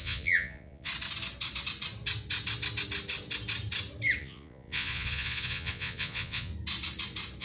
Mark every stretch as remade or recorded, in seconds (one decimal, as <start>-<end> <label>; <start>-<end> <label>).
0.0-0.9 remade; 0.9-4.2 recorded; 4.2-6.5 remade; 6.5-7.4 recorded